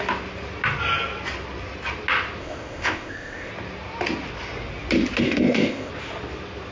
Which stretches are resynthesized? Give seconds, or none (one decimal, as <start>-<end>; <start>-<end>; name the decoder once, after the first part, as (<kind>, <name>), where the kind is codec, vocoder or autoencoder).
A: 2.4-3.5 (codec, ZipCodec); 5.2-5.9

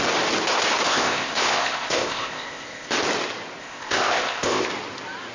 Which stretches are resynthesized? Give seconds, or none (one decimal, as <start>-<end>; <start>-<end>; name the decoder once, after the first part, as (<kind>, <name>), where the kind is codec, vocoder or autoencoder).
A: 0.9-2.9 (codec, ZipCodec); 3.6-4.7

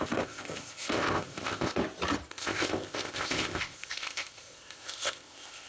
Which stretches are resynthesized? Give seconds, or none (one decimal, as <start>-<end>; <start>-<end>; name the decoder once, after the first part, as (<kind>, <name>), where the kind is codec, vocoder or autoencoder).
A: 0.0-1.8 (codec, ZipCodec); 2.3-5.7

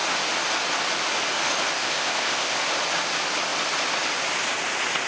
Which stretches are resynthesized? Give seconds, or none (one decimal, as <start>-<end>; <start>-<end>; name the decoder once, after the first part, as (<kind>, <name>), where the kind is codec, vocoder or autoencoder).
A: 1.8-2.6 (codec, ZipCodec)